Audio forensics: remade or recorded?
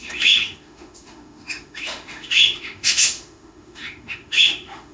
remade